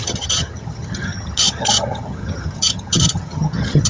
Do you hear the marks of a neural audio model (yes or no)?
yes